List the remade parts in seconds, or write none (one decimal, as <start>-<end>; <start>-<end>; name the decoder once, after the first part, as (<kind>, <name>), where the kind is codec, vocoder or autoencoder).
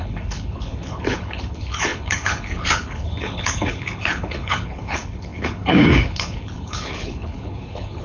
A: 0.0-8.0 (codec, HILCodec)